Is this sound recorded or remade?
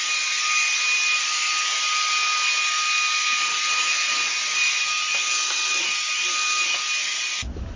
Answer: recorded